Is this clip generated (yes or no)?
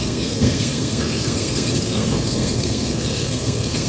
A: yes